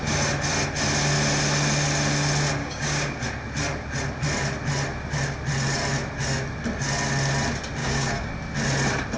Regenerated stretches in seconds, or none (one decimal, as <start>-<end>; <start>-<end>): 2.6-3.2; 7.8-8.3